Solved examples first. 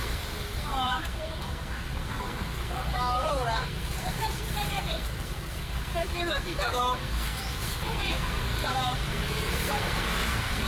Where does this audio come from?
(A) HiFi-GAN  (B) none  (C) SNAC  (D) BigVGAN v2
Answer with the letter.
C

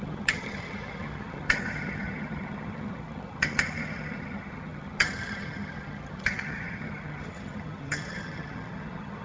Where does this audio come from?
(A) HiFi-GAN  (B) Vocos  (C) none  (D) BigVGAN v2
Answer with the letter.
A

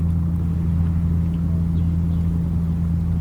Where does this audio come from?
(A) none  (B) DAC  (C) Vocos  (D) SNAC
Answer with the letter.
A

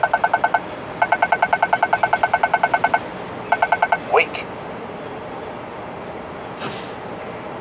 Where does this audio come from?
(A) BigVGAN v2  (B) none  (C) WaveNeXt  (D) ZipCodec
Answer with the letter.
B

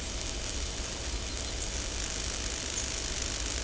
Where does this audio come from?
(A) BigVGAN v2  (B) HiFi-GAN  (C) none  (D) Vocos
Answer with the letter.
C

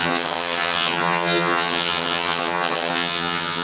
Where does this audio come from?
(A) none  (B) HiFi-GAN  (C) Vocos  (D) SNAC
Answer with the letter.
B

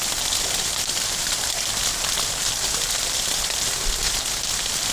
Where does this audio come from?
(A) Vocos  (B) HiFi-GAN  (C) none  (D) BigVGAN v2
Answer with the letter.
C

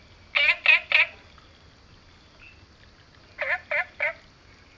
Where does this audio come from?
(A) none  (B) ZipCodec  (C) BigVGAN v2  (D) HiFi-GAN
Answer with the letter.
A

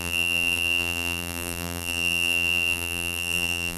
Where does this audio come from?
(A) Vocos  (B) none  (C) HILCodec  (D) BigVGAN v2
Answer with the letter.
D